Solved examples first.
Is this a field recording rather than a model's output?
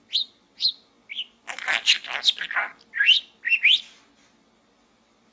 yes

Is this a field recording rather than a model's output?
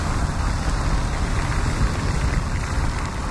yes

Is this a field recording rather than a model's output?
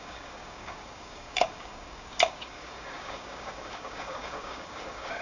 no